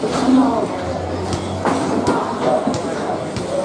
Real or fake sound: real